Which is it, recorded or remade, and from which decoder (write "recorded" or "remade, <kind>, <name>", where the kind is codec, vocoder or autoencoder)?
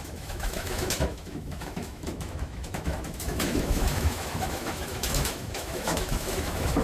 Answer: remade, autoencoder, DAC-VAE